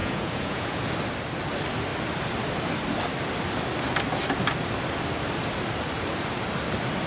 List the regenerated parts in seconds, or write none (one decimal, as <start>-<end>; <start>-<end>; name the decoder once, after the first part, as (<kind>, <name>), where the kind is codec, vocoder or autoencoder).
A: 0.0-0.9 (vocoder, Vocos)